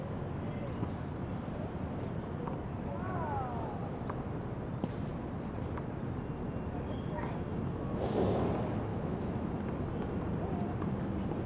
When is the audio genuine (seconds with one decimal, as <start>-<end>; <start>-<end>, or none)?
0.0-8.9; 9.5-11.5